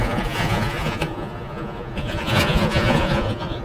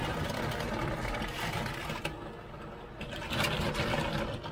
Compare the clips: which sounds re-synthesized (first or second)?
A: first